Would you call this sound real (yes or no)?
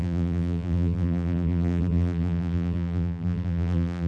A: no